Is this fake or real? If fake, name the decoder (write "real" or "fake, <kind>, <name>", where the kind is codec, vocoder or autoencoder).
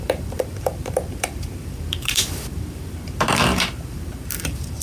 fake, vocoder, BigVGAN v2